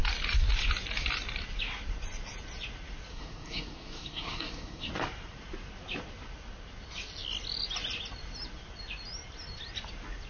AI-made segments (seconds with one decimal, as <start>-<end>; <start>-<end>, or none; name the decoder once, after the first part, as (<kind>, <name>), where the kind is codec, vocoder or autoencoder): 3.1-4.9 (codec, SNAC)